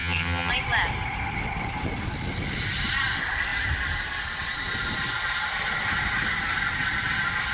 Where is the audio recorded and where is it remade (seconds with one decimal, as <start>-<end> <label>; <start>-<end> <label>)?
0.0-0.5 remade; 0.5-7.5 recorded